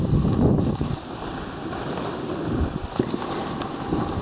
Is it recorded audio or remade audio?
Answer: recorded